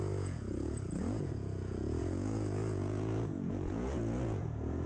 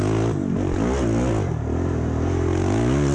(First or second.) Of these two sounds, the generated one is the first